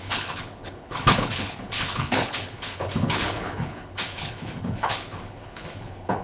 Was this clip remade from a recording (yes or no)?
yes